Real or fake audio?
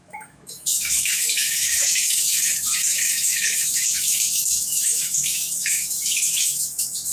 fake